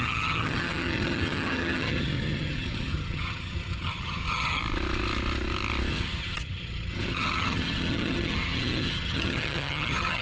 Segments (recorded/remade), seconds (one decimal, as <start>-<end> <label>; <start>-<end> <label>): 0.0-4.6 remade; 4.6-5.9 recorded; 5.9-10.2 remade